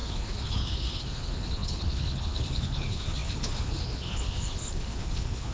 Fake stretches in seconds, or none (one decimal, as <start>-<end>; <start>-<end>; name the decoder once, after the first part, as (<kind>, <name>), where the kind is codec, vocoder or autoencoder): 0.0-5.5 (codec, HILCodec)